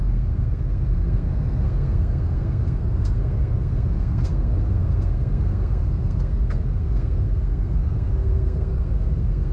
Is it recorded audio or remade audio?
remade